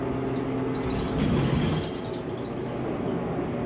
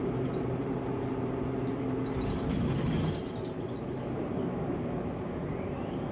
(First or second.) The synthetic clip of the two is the second